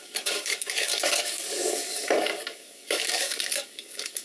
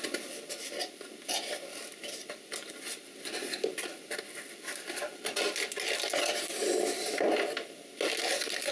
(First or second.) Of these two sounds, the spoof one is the first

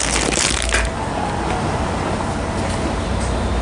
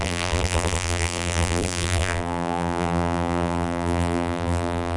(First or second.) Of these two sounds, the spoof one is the second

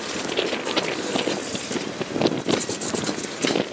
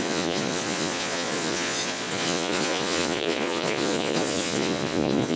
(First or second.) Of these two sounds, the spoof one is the second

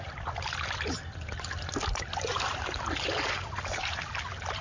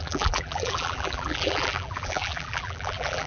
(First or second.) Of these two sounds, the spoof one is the second